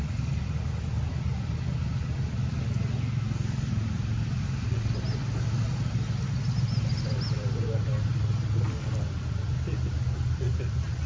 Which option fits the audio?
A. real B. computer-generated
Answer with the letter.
A